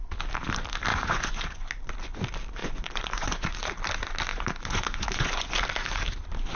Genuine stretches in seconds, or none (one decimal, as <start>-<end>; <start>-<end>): 0.0-0.9; 1.7-2.6; 3.5-4.3; 5.5-6.6